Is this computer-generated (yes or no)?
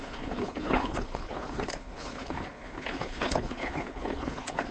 yes